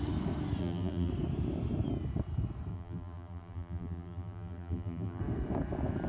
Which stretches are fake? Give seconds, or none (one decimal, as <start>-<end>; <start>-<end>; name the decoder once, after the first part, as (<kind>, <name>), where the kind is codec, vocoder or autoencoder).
0.6-1.1 (vocoder, BigVGAN v2); 2.7-5.2